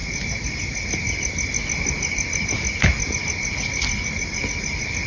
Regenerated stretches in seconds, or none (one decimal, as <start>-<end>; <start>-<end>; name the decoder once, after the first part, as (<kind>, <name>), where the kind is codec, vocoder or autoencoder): none